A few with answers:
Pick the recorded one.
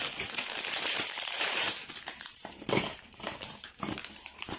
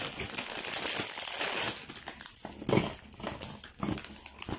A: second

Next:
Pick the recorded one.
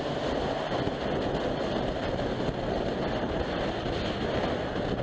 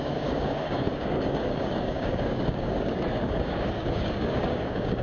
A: first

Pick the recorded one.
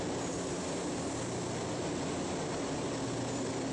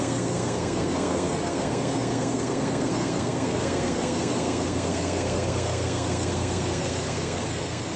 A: first